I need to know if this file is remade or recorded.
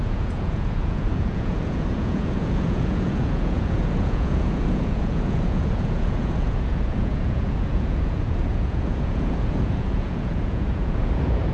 remade